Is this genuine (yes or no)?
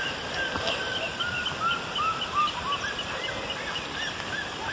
yes